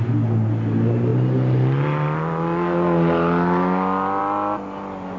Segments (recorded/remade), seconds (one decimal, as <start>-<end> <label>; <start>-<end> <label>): 0.0-5.2 recorded

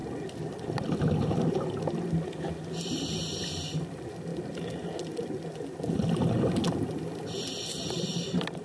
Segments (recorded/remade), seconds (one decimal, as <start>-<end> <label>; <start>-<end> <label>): 0.0-8.6 recorded